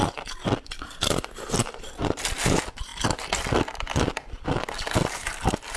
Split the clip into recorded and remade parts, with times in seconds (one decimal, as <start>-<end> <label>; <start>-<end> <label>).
0.0-5.8 recorded